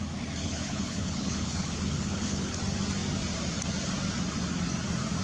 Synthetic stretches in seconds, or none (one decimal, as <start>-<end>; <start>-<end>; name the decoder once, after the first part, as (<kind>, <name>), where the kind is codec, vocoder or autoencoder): 0.4-2.6 (codec, HILCodec)

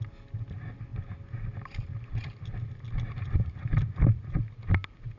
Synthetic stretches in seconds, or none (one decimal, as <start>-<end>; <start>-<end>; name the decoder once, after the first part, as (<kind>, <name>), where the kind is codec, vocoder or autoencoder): none

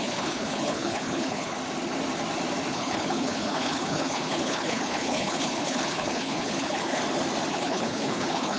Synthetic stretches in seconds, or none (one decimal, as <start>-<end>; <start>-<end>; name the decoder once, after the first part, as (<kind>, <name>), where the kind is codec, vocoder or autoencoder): 0.0-1.6 (codec, HILCodec); 2.7-7.0; 7.5-8.6